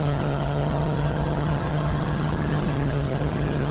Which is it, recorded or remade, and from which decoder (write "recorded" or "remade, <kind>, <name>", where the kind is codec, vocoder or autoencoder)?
remade, vocoder, HiFi-GAN